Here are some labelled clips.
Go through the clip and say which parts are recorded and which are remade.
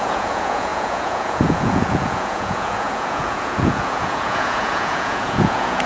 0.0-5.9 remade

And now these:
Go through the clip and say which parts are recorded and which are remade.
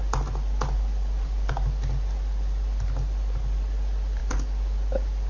0.0-5.3 recorded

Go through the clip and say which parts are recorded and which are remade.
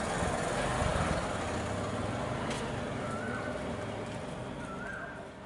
0.0-5.5 recorded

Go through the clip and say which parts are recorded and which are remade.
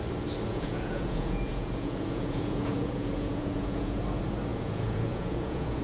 0.0-0.5 recorded; 0.5-4.0 remade; 4.0-4.5 recorded; 4.5-5.8 remade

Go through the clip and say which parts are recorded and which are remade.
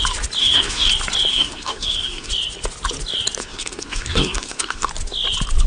0.0-0.4 recorded; 0.4-0.9 remade; 0.9-1.3 recorded; 1.3-2.3 remade; 2.3-3.4 recorded; 3.4-4.9 remade; 4.9-5.7 recorded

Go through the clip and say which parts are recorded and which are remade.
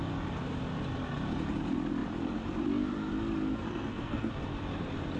0.0-3.5 recorded; 3.5-4.3 remade; 4.3-5.2 recorded